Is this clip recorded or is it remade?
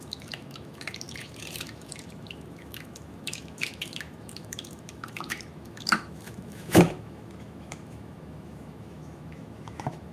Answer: remade